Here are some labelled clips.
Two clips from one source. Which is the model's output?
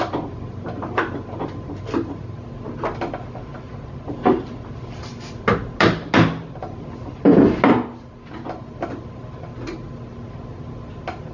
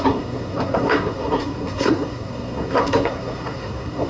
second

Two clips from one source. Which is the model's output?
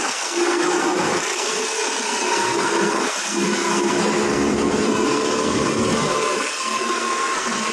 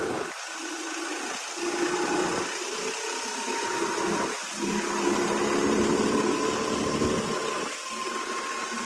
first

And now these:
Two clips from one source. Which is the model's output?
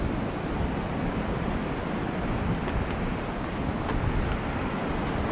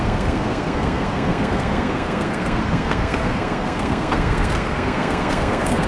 second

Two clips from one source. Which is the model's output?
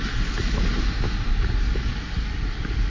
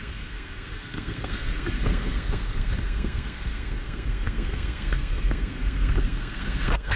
second